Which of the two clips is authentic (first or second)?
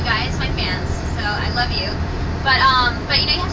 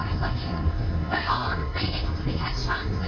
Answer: first